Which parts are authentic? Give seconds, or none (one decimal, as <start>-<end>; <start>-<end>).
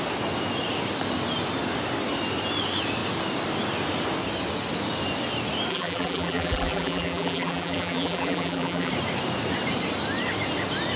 0.0-5.7; 8.9-11.0